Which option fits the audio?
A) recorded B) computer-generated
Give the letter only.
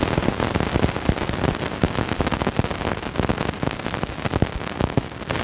A